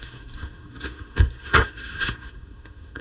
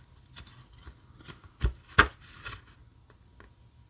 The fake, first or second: first